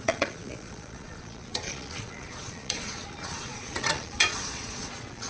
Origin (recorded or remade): remade